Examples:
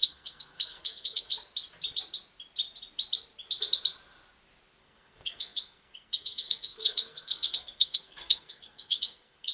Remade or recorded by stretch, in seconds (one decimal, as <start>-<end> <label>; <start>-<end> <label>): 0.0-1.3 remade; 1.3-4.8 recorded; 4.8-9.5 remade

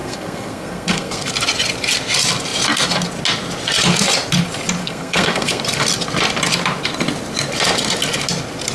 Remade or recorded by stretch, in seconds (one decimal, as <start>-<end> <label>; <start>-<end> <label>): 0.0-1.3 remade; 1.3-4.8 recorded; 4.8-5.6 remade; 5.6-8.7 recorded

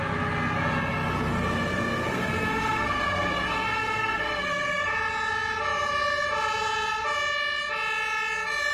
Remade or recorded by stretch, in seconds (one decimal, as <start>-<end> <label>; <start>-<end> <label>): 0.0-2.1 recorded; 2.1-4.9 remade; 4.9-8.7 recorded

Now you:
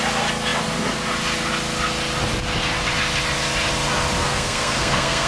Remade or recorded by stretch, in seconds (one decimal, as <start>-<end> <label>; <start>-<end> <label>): 0.0-4.2 recorded; 4.2-5.3 remade

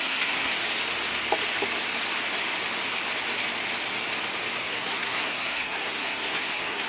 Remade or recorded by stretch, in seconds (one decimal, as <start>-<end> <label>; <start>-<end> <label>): 0.0-0.5 remade; 0.5-4.6 recorded; 4.6-6.9 remade

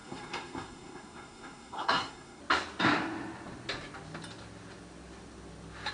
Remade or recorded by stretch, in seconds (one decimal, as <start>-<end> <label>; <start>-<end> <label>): 0.0-2.4 remade; 2.4-5.9 recorded

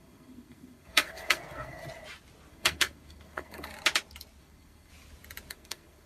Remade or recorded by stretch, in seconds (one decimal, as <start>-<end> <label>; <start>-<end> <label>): 0.0-1.8 remade; 1.8-2.5 recorded; 2.5-3.7 remade; 3.7-4.4 recorded; 4.4-4.9 remade; 4.9-5.5 recorded; 5.5-6.1 remade

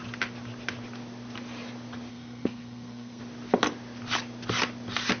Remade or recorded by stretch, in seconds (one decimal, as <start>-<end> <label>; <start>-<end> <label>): 0.0-2.1 recorded; 2.1-3.2 remade; 3.2-5.2 recorded